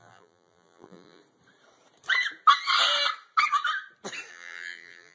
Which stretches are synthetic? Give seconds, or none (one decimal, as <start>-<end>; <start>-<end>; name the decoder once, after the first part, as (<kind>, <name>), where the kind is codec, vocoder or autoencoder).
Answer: 0.0-1.2 (vocoder, BigVGAN v2); 4.3-5.1